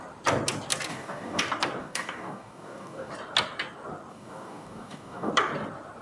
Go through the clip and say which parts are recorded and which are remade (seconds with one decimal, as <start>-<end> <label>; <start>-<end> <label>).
0.0-0.9 recorded; 0.9-1.4 remade; 1.4-1.8 recorded; 1.8-3.1 remade; 3.1-4.1 recorded; 4.1-5.3 remade; 5.3-6.0 recorded